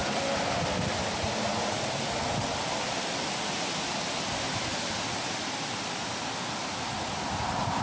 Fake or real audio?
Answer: real